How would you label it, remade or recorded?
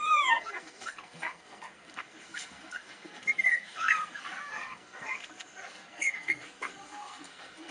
remade